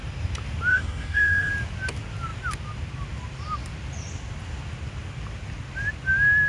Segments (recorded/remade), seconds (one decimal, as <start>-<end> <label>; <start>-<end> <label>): 0.0-0.7 recorded; 0.7-1.5 remade; 1.5-6.5 recorded